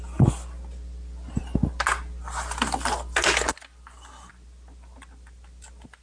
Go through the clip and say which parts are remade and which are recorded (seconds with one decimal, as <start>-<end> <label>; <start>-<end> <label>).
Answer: 0.0-6.0 recorded